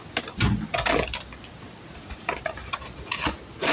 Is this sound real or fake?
real